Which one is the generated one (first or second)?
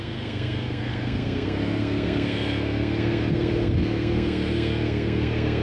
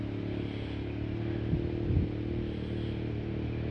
first